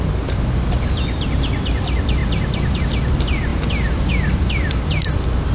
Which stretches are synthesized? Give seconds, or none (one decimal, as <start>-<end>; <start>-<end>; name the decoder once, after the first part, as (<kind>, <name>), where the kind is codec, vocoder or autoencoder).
none